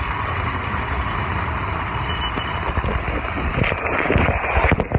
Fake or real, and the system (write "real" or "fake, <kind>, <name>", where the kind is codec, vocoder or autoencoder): real